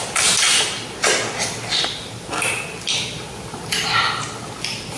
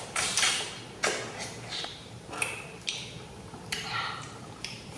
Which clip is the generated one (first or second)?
second